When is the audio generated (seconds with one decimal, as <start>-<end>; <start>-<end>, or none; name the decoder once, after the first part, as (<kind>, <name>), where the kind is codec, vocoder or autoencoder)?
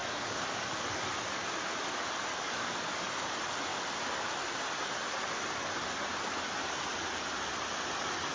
0.0-0.8 (codec, DAC); 2.3-3.1